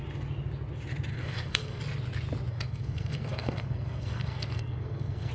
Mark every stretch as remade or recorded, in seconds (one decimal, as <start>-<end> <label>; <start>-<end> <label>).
0.0-1.1 recorded; 1.1-1.8 remade; 1.8-2.5 recorded; 2.5-5.3 remade